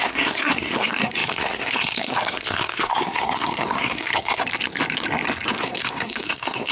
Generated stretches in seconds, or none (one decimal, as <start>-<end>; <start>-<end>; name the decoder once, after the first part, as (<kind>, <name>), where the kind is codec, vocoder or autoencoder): 0.0-4.4 (codec, SNAC); 5.5-6.7